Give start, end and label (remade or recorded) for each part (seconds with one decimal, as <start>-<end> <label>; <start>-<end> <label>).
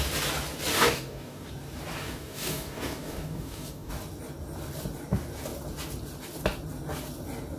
0.0-0.7 recorded; 0.7-1.5 remade; 1.5-1.9 recorded; 1.9-3.9 remade; 3.9-7.6 recorded